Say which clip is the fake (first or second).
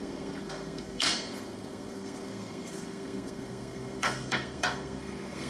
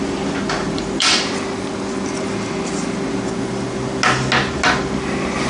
first